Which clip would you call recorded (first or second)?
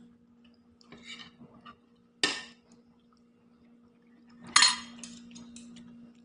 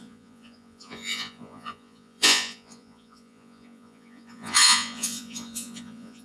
first